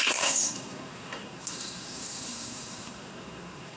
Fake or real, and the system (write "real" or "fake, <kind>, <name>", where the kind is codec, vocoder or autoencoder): fake, codec, SNAC